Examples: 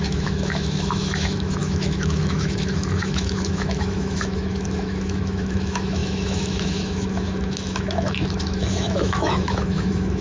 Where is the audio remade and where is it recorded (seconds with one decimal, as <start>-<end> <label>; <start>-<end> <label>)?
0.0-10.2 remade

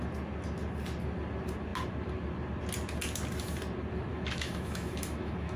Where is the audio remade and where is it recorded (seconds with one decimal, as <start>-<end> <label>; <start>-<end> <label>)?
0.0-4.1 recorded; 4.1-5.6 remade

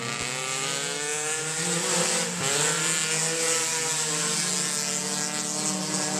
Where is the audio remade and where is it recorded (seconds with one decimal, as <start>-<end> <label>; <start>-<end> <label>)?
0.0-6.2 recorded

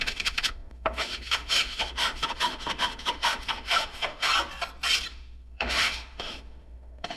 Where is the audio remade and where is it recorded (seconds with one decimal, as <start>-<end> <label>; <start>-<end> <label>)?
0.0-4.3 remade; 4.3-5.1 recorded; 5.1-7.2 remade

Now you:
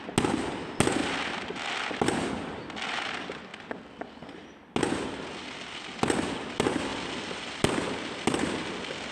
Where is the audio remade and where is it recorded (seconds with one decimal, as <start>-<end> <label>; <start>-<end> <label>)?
0.0-9.1 recorded

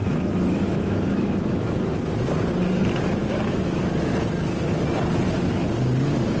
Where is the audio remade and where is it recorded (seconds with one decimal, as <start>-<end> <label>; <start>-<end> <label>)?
0.0-2.1 remade; 2.1-3.2 recorded; 3.2-3.8 remade; 3.8-6.4 recorded

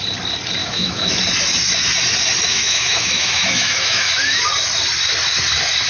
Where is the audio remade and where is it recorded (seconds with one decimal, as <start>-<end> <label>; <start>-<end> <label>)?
0.0-0.6 recorded; 0.6-1.2 remade; 1.2-2.5 recorded; 2.5-4.4 remade; 4.4-5.9 recorded

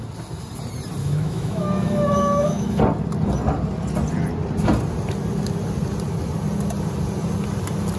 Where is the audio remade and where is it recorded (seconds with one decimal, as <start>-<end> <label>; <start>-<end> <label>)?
0.0-1.0 recorded; 1.0-2.8 remade; 2.8-8.0 recorded